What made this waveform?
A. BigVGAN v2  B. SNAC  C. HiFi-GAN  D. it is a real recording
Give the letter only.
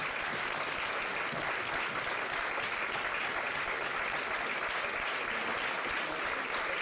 D